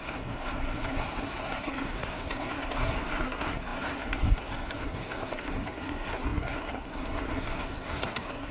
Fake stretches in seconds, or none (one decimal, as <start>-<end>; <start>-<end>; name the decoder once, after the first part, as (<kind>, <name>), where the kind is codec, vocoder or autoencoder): 0.0-8.5 (codec, SNAC)